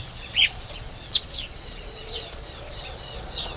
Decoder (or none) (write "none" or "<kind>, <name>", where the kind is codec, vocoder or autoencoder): vocoder, Vocos